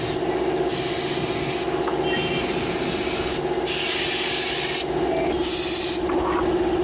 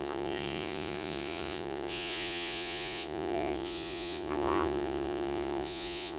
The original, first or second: first